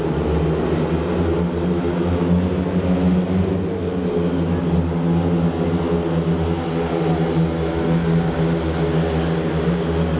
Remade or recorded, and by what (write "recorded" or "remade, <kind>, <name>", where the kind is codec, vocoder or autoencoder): recorded